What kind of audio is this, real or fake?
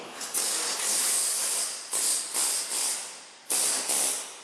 real